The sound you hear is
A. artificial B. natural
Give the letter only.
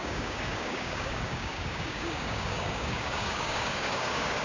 A